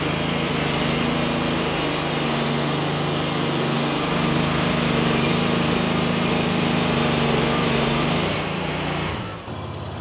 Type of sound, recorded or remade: recorded